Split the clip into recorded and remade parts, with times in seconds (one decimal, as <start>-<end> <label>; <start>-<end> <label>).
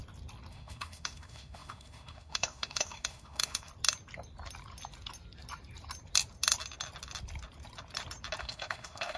0.0-0.5 recorded; 0.5-3.7 remade; 3.7-8.4 recorded; 8.4-9.2 remade